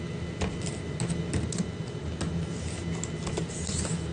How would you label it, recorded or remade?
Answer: recorded